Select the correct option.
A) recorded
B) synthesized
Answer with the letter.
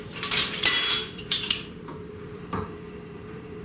B